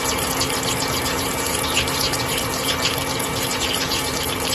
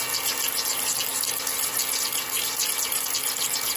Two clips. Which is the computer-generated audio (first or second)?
first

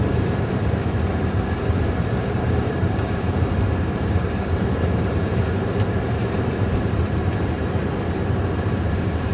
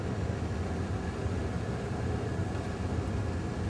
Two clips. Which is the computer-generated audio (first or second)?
first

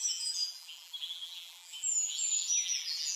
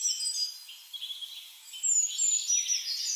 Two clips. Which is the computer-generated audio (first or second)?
first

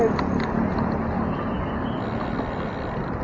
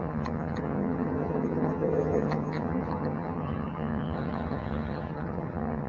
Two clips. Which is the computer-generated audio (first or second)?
second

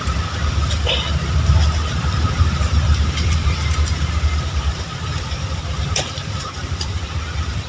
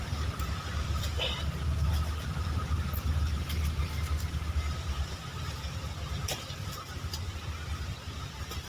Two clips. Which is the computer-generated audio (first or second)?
first